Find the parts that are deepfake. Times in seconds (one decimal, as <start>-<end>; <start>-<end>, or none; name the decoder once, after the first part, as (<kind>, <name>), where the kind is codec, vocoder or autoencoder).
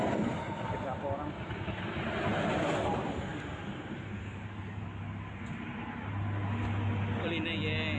none